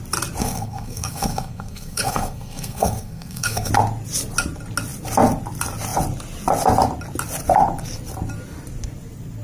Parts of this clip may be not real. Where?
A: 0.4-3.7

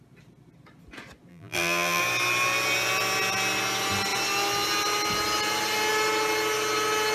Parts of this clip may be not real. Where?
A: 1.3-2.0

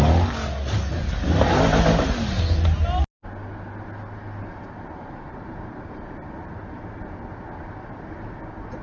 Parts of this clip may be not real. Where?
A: 4.5-6.6

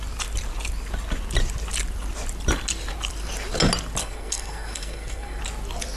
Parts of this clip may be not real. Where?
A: 4.0-5.4